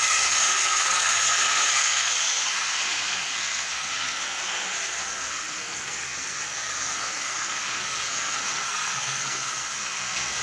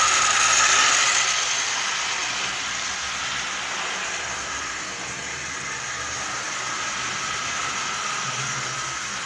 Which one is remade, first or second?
first